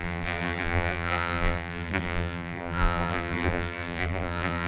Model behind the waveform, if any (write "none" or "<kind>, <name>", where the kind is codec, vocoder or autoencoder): vocoder, BigVGAN v2